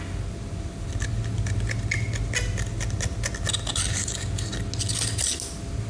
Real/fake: real